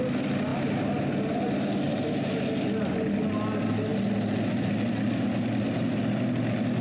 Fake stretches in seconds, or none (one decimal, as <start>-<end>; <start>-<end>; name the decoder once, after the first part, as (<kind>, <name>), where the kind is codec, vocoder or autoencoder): none